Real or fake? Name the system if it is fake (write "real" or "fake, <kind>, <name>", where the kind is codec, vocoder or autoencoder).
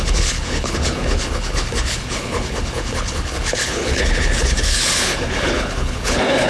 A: fake, codec, HILCodec